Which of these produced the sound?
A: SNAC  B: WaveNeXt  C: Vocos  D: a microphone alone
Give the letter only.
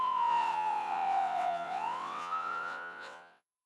B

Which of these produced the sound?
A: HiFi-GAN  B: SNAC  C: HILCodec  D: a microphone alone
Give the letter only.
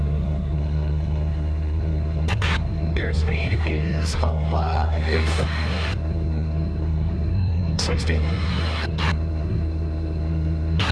B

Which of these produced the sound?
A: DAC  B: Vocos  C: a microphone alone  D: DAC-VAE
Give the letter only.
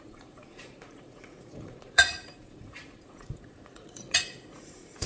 B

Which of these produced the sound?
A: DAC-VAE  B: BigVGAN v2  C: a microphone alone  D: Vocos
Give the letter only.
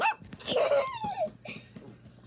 B